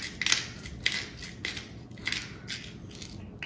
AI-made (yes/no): no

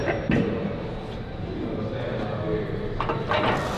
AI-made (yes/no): no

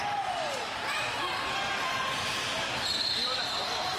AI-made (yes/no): no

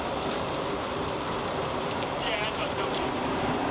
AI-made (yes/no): yes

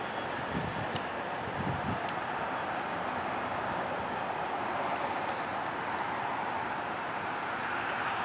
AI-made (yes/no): no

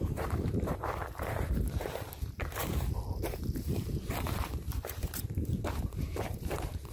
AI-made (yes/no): yes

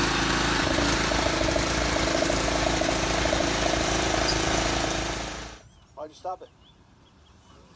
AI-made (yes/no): yes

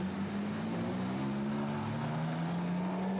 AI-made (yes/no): no